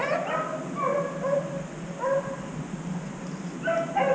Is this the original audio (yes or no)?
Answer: yes